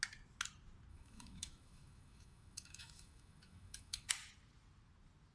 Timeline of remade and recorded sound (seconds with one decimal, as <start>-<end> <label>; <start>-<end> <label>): 0.0-0.9 recorded; 0.9-4.1 remade; 4.1-5.3 recorded